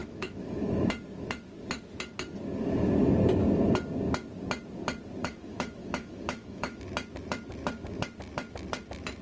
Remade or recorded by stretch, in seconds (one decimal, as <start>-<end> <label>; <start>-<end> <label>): 0.0-0.6 remade; 0.6-5.2 recorded; 5.2-6.8 remade; 6.8-9.2 recorded